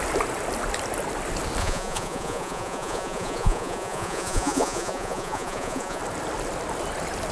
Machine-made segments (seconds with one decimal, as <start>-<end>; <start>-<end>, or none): 1.6-6.0